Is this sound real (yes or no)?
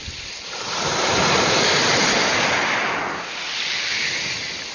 yes